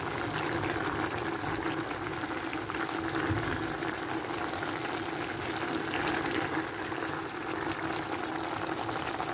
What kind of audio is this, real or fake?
real